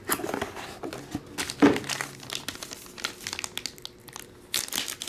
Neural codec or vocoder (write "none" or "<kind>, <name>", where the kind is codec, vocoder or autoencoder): none